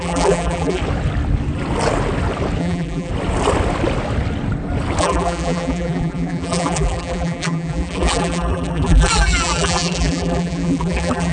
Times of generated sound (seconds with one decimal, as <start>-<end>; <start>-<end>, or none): 0.0-0.8; 2.6-3.1; 5.0-11.3